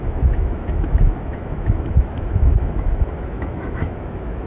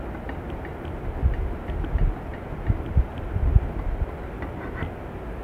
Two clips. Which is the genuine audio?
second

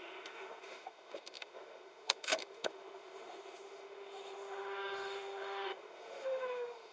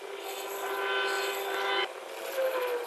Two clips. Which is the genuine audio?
second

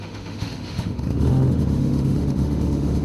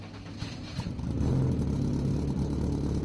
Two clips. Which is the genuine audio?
second